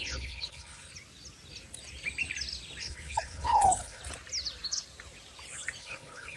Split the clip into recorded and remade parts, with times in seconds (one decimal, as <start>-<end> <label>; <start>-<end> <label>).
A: 0.0-0.9 remade; 0.9-2.8 recorded; 2.8-4.0 remade; 4.0-5.8 recorded; 5.8-6.4 remade

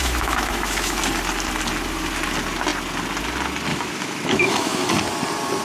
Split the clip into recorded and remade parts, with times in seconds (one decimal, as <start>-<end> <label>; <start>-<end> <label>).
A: 0.0-1.0 remade; 1.0-3.7 recorded; 3.7-4.9 remade; 4.9-5.6 recorded